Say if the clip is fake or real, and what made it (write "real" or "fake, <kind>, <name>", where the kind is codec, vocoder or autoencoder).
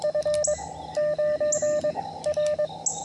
real